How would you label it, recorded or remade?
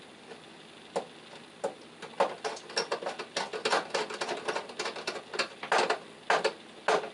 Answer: recorded